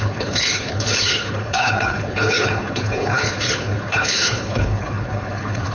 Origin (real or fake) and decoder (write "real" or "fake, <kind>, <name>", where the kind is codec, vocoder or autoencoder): fake, codec, HILCodec